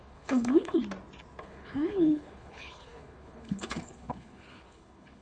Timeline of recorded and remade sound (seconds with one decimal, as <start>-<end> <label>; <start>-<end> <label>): 0.0-0.8 remade; 0.8-1.4 recorded; 1.4-5.2 remade